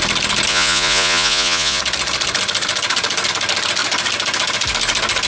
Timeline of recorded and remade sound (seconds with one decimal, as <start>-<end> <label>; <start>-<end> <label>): 0.0-0.5 recorded; 0.5-1.8 remade; 1.8-5.3 recorded